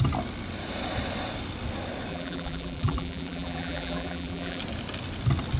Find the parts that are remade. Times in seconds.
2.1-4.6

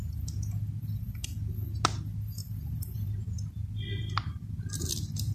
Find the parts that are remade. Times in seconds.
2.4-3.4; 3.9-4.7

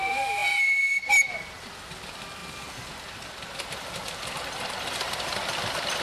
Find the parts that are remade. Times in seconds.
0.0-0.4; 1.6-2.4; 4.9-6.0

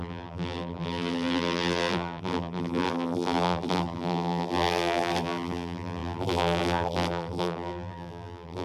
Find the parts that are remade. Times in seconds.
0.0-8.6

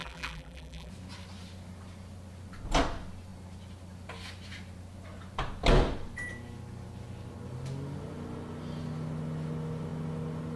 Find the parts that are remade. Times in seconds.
0.0-0.9

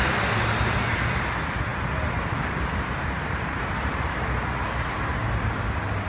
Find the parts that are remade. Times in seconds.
1.7-4.1

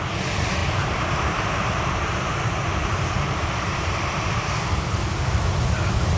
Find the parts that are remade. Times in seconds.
0.6-4.3